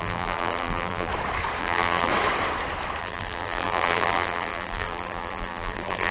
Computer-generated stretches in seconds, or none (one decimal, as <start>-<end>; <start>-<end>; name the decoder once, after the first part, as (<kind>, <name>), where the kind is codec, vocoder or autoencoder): 0.0-1.1 (vocoder, BigVGAN v2); 1.6-2.1; 3.0-6.1